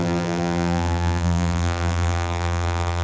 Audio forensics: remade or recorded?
remade